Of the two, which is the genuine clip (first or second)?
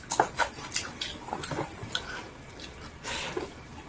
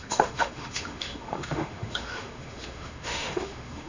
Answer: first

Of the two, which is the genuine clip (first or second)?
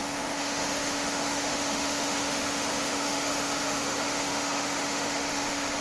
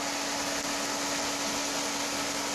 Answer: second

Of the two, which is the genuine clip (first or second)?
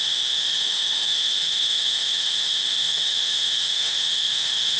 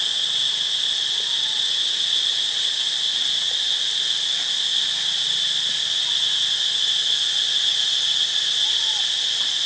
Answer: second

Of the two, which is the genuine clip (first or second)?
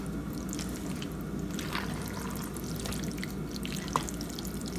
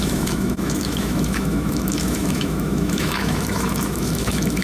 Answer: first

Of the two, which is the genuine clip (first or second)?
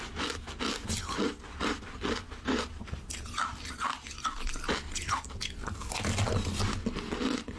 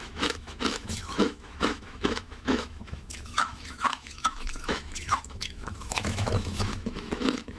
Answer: first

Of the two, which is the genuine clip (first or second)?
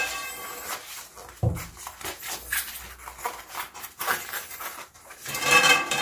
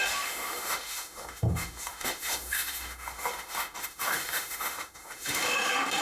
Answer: first